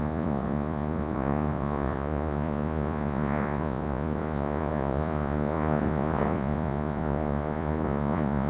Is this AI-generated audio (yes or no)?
yes